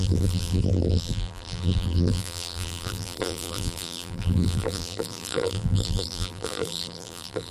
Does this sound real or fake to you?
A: fake